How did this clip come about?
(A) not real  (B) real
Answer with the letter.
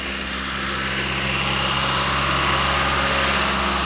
B